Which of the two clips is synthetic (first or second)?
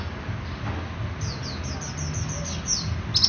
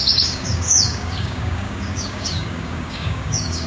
second